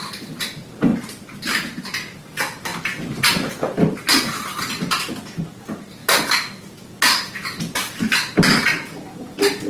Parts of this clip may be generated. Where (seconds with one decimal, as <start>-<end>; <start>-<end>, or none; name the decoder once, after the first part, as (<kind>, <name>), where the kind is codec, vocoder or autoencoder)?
0.9-1.8 (vocoder, BigVGAN v2); 2.7-4.2